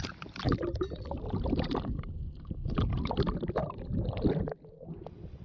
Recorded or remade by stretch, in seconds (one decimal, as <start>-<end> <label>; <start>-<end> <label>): 0.0-5.4 recorded